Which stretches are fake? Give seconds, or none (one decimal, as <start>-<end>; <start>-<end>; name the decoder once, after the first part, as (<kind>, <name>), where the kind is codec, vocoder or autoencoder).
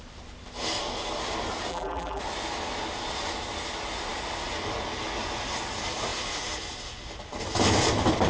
1.7-2.2 (vocoder, BigVGAN v2)